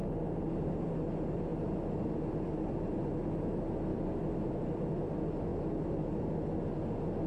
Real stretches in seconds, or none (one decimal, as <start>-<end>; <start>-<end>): 0.9-3.9; 5.1-7.3